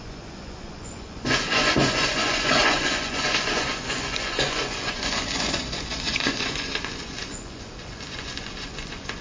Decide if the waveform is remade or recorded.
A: remade